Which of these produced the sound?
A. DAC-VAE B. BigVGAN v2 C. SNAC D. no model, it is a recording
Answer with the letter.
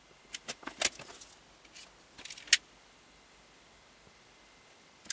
D